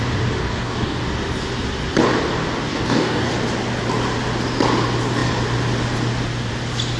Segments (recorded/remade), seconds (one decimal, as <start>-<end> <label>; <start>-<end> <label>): 0.0-0.4 recorded; 0.4-1.0 remade; 1.0-2.7 recorded; 2.7-3.3 remade; 3.3-7.0 recorded